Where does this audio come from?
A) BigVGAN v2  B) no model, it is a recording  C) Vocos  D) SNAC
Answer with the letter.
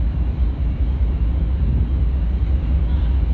B